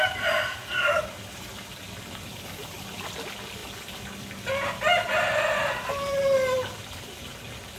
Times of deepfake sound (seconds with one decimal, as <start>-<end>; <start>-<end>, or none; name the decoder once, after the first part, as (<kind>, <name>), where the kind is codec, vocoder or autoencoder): none